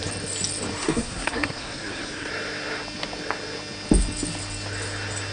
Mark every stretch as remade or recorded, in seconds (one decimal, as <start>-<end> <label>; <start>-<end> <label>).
0.0-0.8 recorded; 0.8-2.3 remade; 2.3-5.3 recorded